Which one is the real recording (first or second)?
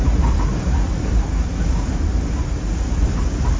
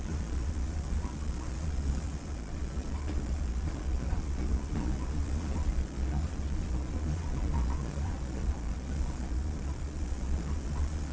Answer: first